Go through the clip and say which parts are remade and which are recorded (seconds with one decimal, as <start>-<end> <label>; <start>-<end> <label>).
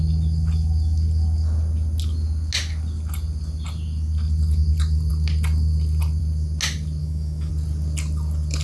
0.0-7.0 recorded; 7.0-7.5 remade; 7.5-8.6 recorded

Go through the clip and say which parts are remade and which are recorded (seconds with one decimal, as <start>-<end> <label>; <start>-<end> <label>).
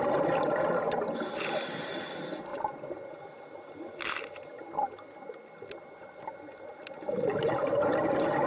0.0-2.5 recorded; 2.5-7.5 remade; 7.5-8.5 recorded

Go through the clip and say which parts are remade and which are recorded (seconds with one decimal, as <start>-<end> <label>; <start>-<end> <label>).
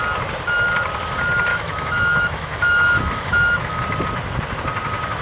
0.0-1.5 recorded; 1.5-3.8 remade; 3.8-5.2 recorded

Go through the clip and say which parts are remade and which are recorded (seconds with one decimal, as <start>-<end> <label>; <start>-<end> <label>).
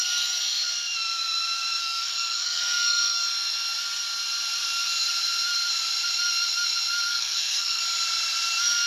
0.0-1.8 recorded; 1.8-3.3 remade; 3.3-7.1 recorded; 7.1-7.8 remade; 7.8-8.9 recorded